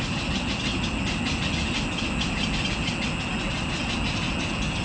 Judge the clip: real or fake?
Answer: real